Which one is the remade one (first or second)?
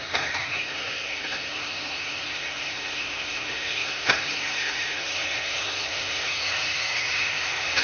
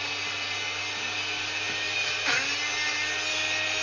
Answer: first